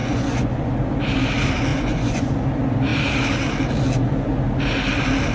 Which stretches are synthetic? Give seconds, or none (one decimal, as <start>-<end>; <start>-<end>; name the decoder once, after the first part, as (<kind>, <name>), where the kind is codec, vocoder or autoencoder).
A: 0.0-0.7 (vocoder, Vocos); 1.7-2.3